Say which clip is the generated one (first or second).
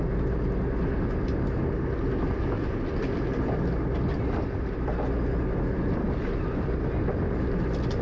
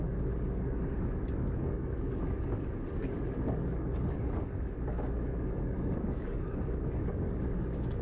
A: second